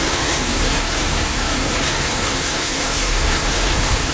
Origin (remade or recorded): remade